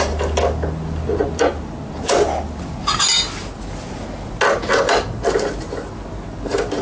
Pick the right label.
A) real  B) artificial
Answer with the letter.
A